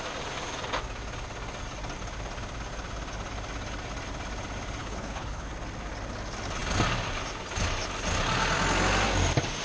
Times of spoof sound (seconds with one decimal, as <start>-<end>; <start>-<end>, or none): 4.8-5.5